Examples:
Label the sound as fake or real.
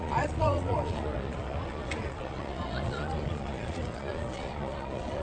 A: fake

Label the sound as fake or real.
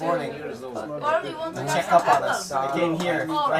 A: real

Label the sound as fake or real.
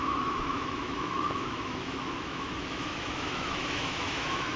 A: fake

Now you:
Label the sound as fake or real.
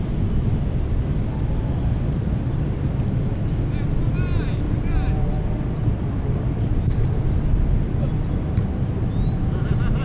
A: real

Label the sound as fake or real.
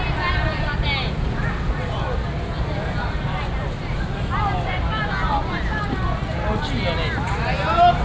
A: real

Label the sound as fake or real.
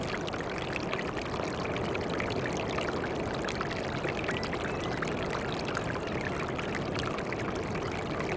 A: real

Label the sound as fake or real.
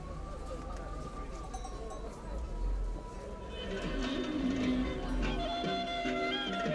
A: real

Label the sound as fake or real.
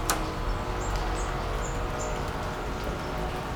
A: real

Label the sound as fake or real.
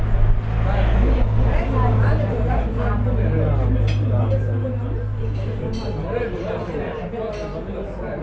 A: real